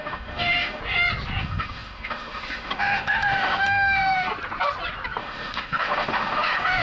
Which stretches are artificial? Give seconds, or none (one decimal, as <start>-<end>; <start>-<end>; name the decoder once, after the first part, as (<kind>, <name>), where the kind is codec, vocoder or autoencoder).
0.0-0.8 (autoencoder, DAC-VAE); 1.4-4.3; 5.2-6.8